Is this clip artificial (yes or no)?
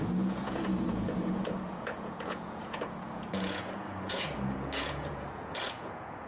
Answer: yes